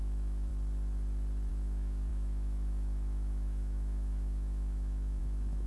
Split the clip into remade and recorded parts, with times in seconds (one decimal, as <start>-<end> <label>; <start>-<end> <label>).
0.0-0.5 remade; 0.5-1.5 recorded; 1.5-5.7 remade